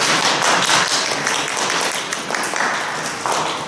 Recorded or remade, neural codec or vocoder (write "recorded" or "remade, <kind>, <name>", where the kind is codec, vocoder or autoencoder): recorded